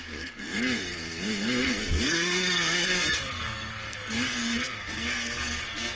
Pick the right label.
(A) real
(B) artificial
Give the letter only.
B